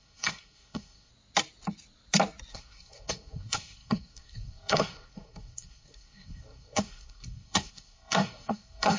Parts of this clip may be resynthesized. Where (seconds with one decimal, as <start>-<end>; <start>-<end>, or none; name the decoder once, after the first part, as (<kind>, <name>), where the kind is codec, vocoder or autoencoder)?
0.0-1.1 (codec, SNAC); 2.5-9.0